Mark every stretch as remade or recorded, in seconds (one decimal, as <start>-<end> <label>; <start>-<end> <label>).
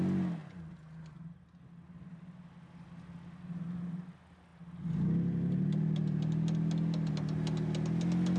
0.0-8.4 recorded